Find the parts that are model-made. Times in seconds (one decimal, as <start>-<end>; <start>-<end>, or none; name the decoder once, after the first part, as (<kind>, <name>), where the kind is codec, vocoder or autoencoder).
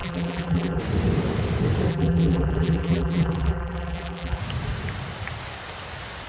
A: 0.0-0.8 (vocoder, BigVGAN v2); 1.9-4.4